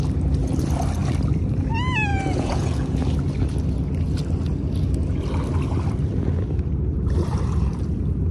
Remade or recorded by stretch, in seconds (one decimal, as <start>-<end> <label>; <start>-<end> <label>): 0.0-2.1 recorded; 2.1-3.0 remade; 3.0-8.3 recorded